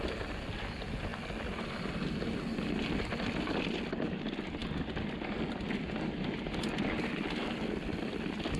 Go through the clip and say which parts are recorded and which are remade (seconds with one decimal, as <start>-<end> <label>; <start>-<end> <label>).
0.0-8.6 recorded